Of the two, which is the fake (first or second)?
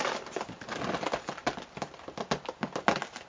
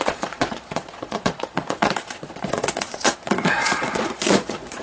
second